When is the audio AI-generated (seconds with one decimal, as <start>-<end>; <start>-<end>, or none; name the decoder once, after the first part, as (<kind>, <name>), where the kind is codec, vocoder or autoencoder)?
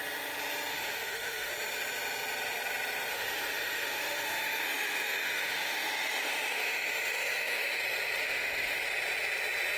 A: 0.7-1.5 (autoencoder, DAC-VAE); 3.1-7.8; 8.2-8.9